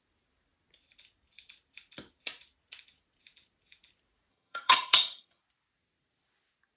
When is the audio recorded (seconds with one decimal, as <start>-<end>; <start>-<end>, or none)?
0.0-4.3; 5.4-6.8